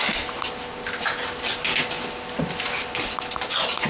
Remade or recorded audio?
recorded